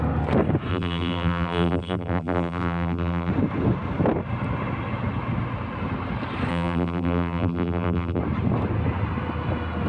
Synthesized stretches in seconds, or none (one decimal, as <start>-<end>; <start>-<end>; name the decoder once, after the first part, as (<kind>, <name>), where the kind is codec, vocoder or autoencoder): 0.7-3.3 (vocoder, BigVGAN v2); 6.5-8.2